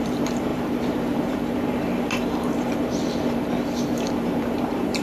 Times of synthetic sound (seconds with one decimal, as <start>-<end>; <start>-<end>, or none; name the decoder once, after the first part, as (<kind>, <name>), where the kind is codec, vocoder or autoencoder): 0.0-5.0 (vocoder, BigVGAN v2)